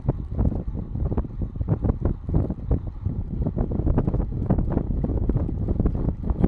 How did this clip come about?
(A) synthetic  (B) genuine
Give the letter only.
B